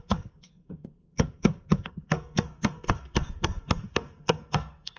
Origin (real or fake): fake